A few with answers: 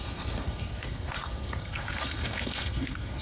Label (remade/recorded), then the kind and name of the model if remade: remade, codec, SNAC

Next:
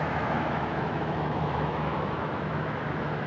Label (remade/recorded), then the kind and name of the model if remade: remade, autoencoder, DAC-VAE